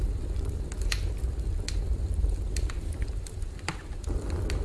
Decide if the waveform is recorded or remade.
recorded